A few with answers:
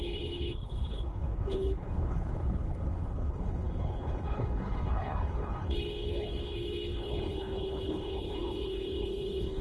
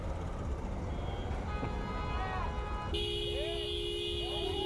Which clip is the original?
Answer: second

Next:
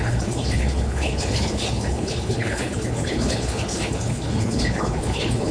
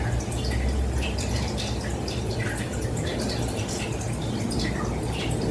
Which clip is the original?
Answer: second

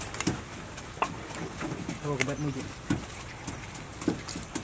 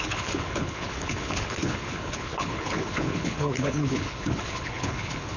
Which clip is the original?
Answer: first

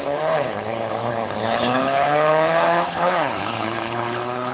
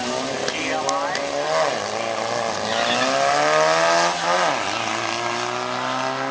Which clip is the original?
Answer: second